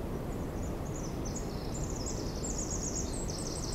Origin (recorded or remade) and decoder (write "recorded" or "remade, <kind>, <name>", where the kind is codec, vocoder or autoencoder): recorded